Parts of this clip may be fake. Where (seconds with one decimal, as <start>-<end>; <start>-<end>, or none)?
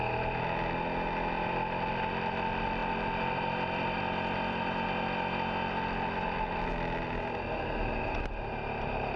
none